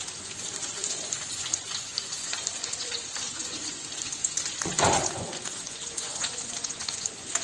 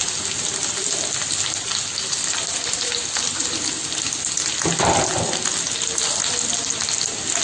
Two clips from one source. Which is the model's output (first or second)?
first